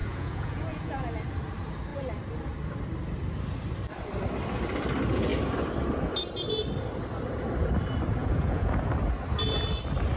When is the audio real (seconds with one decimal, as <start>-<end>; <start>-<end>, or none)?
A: 1.1-8.2; 8.7-10.2